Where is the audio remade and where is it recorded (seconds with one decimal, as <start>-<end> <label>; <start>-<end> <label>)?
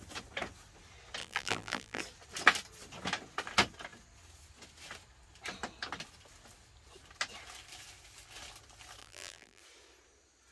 0.0-1.2 recorded; 1.2-2.0 remade; 2.0-9.0 recorded; 9.0-9.6 remade; 9.6-10.5 recorded